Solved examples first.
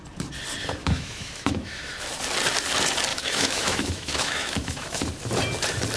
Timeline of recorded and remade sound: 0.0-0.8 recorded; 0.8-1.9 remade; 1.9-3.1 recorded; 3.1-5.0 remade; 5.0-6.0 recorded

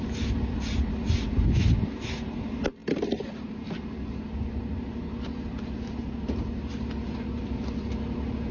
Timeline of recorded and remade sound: 0.0-8.5 recorded

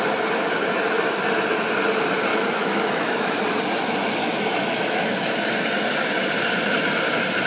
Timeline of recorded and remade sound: 0.0-2.3 recorded; 2.3-3.4 remade; 3.4-4.2 recorded; 4.2-5.5 remade; 5.5-7.5 recorded

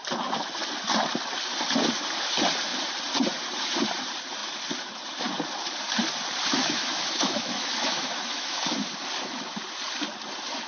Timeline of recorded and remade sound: 0.0-6.5 recorded; 6.5-8.6 remade; 8.6-10.7 recorded

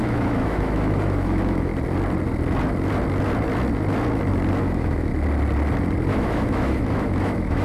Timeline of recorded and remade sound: 0.0-1.7 remade; 1.7-4.6 recorded; 4.6-5.1 remade; 5.1-6.1 recorded; 6.1-7.6 remade

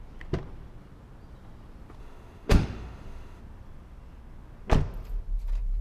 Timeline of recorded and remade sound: 0.0-2.0 recorded; 2.0-3.4 remade; 3.4-5.8 recorded

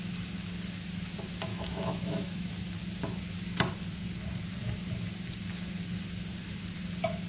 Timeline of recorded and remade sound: 0.0-1.5 recorded; 1.5-2.5 remade; 2.5-7.3 recorded